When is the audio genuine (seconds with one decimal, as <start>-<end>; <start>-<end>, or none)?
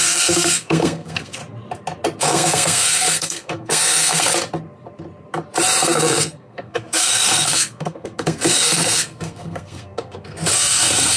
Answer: 1.4-2.2; 4.3-5.8